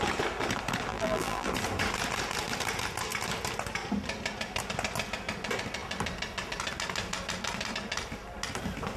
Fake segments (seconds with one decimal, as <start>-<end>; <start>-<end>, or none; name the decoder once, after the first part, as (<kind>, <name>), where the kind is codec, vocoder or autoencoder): 0.9-1.5 (vocoder, BigVGAN v2)